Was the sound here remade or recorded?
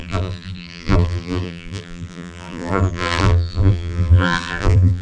remade